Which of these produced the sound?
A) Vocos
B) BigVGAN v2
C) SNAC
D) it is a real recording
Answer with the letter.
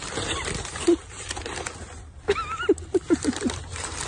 D